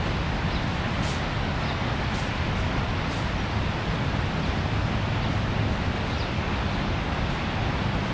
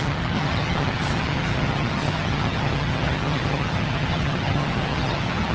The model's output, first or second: second